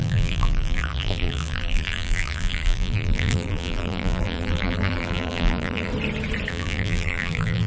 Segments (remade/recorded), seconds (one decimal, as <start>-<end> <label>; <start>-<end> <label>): 0.0-5.9 remade; 5.9-6.5 recorded; 6.5-7.7 remade